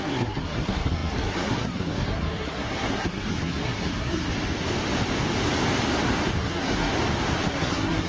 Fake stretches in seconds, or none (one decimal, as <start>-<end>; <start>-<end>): 0.0-4.3; 6.4-6.9; 7.5-8.1